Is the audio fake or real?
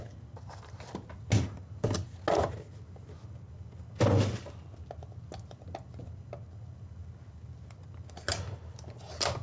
real